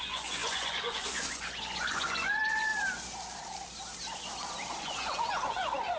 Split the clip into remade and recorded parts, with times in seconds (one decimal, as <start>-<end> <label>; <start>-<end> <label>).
0.0-2.7 remade; 2.7-4.8 recorded; 4.8-6.0 remade